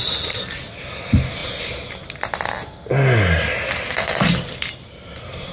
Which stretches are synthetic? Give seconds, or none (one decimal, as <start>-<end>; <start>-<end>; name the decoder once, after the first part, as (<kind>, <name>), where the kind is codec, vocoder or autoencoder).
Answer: none